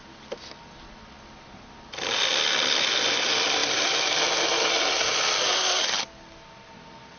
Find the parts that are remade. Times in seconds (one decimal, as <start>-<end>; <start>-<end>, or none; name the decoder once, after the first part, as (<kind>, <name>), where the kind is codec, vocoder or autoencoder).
none